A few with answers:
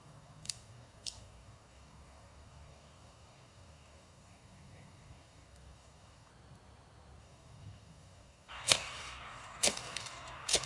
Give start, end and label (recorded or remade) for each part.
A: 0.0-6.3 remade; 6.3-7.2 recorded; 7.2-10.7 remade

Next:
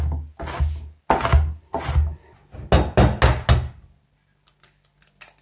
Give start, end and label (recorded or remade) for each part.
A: 0.0-5.4 recorded

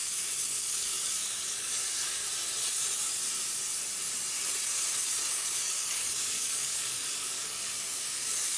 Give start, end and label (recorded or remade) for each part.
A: 0.0-2.2 remade; 2.2-5.3 recorded; 5.3-8.6 remade

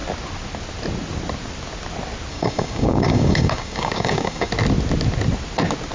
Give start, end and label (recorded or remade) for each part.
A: 0.0-2.3 recorded; 2.3-4.5 remade; 4.5-5.9 recorded

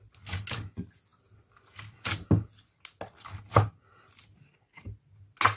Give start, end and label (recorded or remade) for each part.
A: 0.0-5.6 recorded

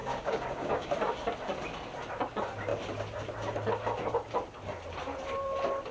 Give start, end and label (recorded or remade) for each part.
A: 0.0-0.9 remade; 0.9-5.9 recorded